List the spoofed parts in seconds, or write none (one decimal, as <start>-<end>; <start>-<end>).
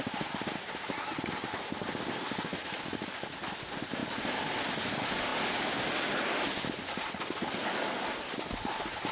none